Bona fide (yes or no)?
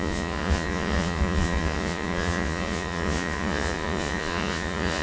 no